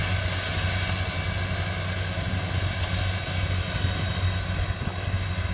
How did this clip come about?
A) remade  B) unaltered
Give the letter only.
B